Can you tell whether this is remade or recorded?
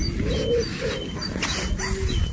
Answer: recorded